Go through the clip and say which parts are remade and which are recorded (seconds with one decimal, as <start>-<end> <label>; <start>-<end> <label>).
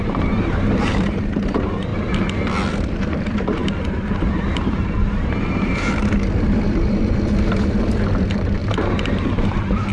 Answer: 0.0-1.9 remade; 1.9-2.7 recorded; 2.7-9.9 remade